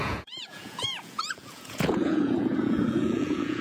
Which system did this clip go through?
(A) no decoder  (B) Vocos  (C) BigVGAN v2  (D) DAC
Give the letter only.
B